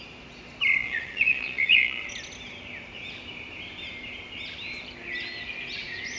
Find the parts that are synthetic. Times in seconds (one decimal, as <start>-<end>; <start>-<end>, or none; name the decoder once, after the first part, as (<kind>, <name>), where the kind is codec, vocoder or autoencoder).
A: 0.8-2.1 (vocoder, Vocos)